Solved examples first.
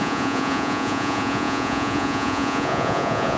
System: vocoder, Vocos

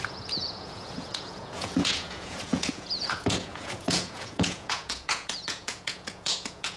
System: vocoder, Vocos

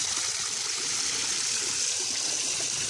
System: none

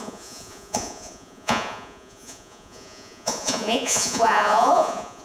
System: vocoder, Vocos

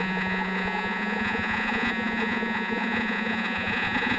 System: vocoder, Vocos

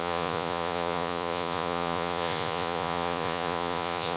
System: vocoder, Vocos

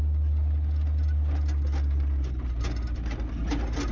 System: none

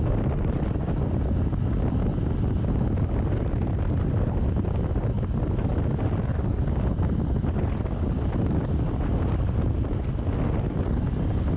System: none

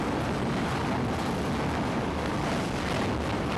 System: none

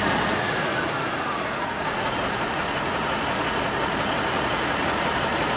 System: vocoder, Vocos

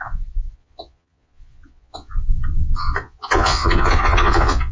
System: vocoder, Vocos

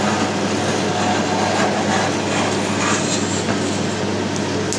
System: none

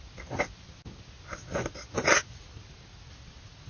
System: none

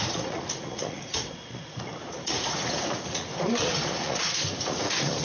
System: vocoder, Vocos